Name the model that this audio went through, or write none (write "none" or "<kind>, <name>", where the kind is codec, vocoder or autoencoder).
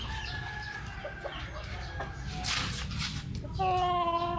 none